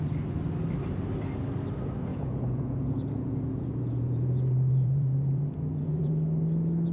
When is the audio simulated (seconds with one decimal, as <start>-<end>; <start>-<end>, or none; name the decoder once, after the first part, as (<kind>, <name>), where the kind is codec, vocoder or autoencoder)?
2.1-6.1 (vocoder, Vocos)